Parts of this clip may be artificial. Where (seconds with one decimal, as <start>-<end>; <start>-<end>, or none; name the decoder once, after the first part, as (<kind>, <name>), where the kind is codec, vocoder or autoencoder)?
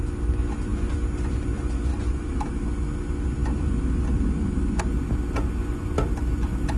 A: 1.9-2.6 (vocoder, BigVGAN v2)